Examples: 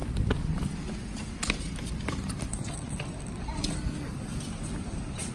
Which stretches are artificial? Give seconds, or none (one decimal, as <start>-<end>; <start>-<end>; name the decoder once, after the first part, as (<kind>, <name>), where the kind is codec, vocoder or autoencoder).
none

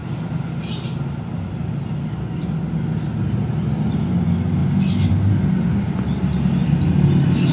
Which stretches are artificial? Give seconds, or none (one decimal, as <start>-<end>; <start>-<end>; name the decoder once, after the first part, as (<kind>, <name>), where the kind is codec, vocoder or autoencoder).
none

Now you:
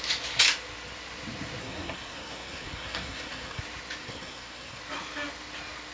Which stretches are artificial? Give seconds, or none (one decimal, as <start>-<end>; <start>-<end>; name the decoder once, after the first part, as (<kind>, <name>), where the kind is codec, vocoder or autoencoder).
1.6-3.6 (codec, SNAC); 4.0-4.8

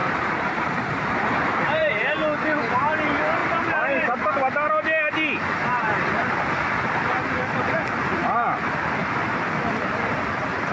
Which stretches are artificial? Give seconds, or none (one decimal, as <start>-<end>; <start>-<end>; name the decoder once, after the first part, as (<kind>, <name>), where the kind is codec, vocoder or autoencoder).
0.0-1.9 (vocoder, BigVGAN v2); 3.4-4.3

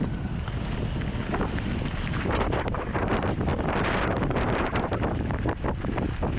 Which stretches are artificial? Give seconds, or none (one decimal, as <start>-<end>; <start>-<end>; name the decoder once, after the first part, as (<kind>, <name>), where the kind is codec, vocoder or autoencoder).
3.5-5.6 (vocoder, BigVGAN v2)

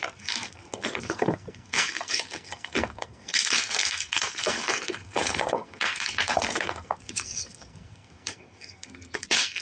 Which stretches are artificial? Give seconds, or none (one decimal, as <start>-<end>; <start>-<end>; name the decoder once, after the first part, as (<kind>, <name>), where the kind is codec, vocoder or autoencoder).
0.0-9.6 (codec, SNAC)